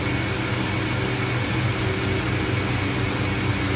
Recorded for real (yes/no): yes